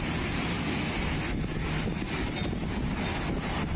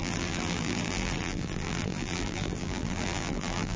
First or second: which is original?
first